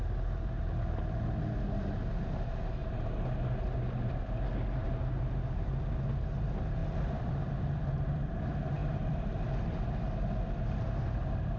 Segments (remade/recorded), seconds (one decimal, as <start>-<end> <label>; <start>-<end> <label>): 0.0-6.8 recorded; 6.8-8.3 remade; 8.3-8.8 recorded; 8.8-9.5 remade; 9.5-11.6 recorded